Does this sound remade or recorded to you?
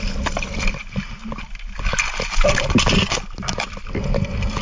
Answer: recorded